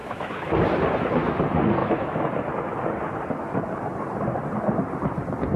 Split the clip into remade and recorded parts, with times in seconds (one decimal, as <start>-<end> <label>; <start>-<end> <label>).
0.0-0.5 remade; 0.5-1.8 recorded; 1.8-2.3 remade; 2.3-5.6 recorded